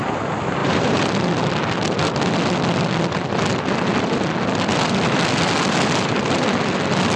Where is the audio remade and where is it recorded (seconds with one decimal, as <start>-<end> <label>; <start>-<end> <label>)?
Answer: 0.0-0.6 recorded; 0.6-1.1 remade; 1.1-7.2 recorded